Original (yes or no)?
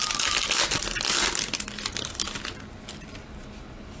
yes